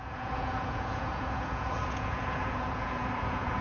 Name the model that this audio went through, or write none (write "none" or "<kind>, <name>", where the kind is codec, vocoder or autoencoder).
vocoder, Vocos